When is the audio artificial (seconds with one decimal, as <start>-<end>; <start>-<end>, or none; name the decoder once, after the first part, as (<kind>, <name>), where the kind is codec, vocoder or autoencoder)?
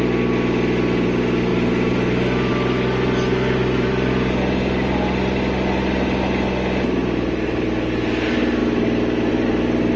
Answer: none